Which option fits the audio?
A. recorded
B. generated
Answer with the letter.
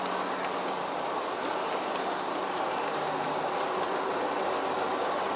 A